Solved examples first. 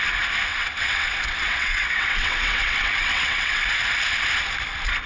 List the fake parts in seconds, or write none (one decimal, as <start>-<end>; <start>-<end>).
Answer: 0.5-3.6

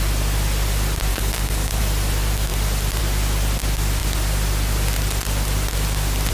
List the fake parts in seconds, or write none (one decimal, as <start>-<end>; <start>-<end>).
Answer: 1.1-1.8

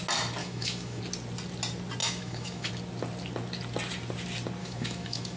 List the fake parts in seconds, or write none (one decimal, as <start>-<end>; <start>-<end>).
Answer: 0.4-1.0; 2.0-2.7; 4.6-5.4

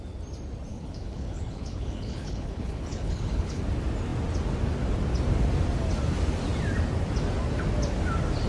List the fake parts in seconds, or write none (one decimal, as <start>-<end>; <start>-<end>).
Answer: 0.7-3.6

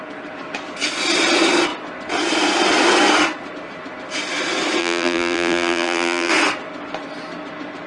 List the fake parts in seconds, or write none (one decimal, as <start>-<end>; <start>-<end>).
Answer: 4.8-6.3

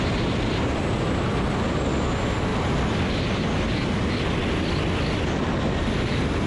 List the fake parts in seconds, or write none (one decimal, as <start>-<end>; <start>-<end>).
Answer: 2.5-4.8

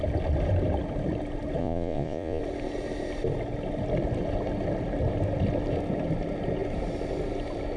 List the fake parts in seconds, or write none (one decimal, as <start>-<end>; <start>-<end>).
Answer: 1.6-2.4

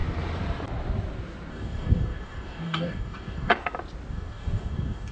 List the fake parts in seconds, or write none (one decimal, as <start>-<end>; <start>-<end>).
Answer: 1.5-3.5; 4.1-5.1